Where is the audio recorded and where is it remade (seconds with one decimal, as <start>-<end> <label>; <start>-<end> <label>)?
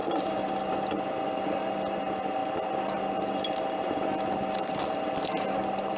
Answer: 0.0-6.0 recorded